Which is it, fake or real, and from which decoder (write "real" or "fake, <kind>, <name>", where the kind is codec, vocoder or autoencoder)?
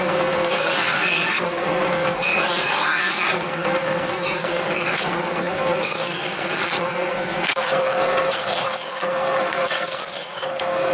fake, codec, SNAC